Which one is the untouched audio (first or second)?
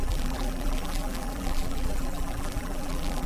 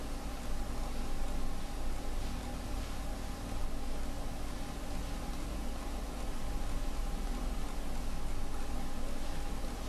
second